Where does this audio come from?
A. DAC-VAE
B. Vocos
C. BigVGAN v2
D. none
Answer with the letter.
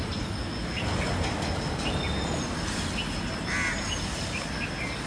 D